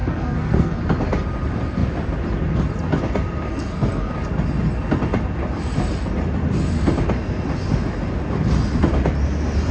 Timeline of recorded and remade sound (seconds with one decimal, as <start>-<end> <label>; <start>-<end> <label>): 0.0-0.8 remade; 0.8-3.5 recorded; 3.5-4.1 remade; 4.1-9.7 recorded